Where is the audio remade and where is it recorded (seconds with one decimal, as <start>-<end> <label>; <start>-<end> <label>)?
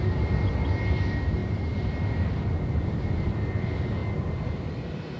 0.0-1.4 recorded; 1.4-2.8 remade; 2.8-5.2 recorded